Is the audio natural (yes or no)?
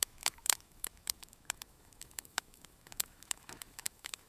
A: no